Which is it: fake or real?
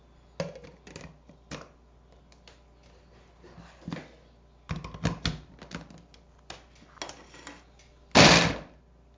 real